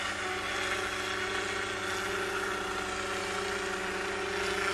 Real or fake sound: real